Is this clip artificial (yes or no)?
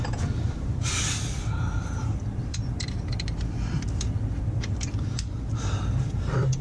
yes